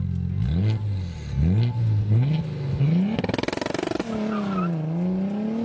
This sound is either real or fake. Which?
real